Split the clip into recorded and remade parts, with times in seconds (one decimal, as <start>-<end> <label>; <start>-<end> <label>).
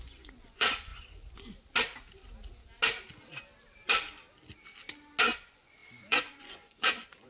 0.0-0.9 remade; 0.9-5.2 recorded; 5.2-7.3 remade